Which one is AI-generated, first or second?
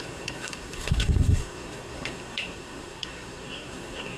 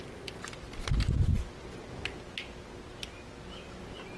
first